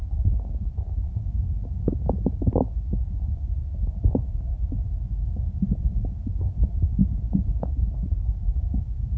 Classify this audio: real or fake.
real